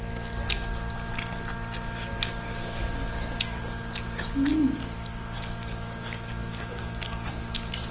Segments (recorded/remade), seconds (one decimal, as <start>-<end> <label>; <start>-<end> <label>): 0.0-5.1 recorded; 5.1-7.3 remade; 7.3-7.9 recorded